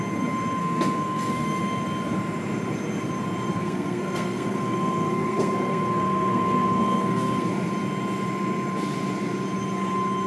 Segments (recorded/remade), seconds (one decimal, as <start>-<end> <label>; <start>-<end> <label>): 0.0-0.6 recorded; 0.6-1.6 remade; 1.6-3.5 recorded; 3.5-7.5 remade; 7.5-10.3 recorded

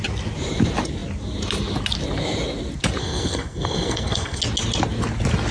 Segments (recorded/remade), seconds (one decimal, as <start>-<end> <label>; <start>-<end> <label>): 0.0-3.0 recorded; 3.0-4.4 remade; 4.4-5.5 recorded

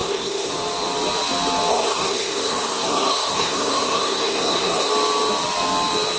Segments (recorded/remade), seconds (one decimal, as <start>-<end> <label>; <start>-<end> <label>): 0.0-0.5 remade; 0.5-1.7 recorded; 1.7-4.9 remade; 4.9-6.2 recorded

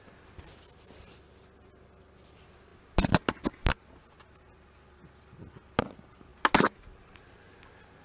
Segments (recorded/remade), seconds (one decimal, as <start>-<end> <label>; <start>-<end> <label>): 0.0-8.0 recorded

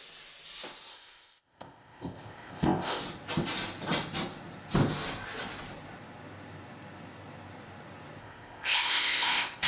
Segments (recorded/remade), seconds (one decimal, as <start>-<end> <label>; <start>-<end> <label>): 0.0-0.9 recorded; 0.9-3.0 remade; 3.0-8.2 recorded; 8.2-9.7 remade

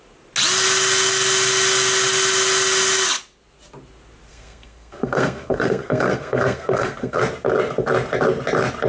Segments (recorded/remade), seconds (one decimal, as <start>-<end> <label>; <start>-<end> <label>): 0.0-4.3 recorded; 4.3-7.2 remade; 7.2-8.9 recorded